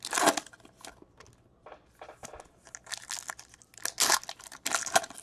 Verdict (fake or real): real